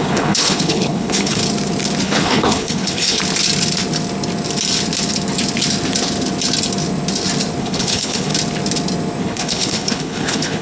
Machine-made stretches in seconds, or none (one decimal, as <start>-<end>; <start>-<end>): 0.0-1.4; 2.0-3.2; 7.6-8.3; 9.2-10.6